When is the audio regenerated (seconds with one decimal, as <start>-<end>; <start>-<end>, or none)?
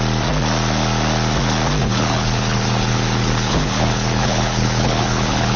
1.8-5.6